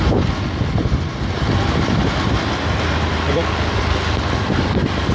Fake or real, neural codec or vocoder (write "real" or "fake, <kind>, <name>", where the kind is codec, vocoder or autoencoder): real